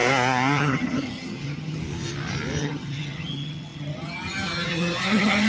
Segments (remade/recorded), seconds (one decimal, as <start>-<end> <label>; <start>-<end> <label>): 0.0-0.6 recorded; 0.6-1.8 remade; 1.8-2.6 recorded; 2.6-5.5 remade